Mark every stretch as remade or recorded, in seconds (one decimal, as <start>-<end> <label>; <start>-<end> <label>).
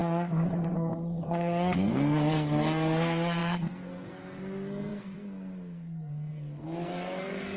0.0-7.6 remade